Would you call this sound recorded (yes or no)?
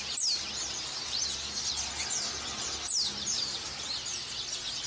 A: yes